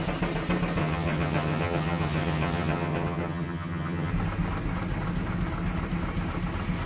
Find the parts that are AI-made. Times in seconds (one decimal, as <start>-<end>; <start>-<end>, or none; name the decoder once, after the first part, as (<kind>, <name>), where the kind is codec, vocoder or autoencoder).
0.8-4.1 (vocoder, HiFi-GAN)